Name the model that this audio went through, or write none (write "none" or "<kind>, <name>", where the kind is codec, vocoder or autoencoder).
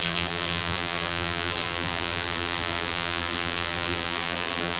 vocoder, BigVGAN v2